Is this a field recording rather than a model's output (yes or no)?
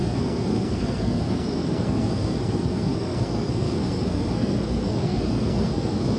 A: no